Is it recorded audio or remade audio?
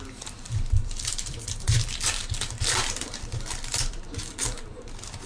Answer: remade